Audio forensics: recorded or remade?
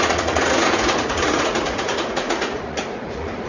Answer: remade